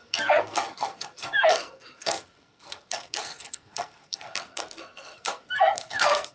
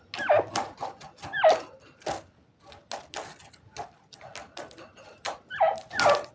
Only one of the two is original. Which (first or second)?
second